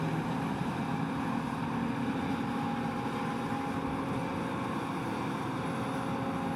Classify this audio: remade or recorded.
recorded